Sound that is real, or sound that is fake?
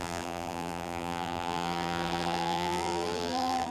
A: fake